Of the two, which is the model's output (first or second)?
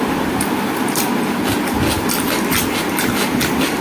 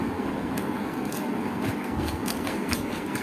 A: second